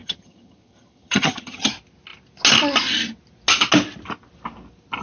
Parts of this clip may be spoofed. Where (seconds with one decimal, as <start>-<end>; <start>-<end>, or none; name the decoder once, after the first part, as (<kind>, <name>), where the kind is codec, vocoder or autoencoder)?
0.0-1.7 (vocoder, HiFi-GAN)